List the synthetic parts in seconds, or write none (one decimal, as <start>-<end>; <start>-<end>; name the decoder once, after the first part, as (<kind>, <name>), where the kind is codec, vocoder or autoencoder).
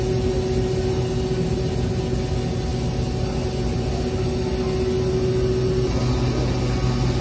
none